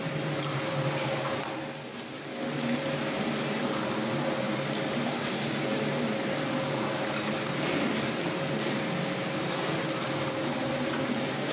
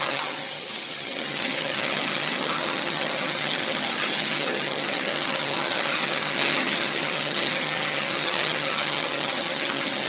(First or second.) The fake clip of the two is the second